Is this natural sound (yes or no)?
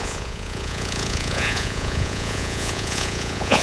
no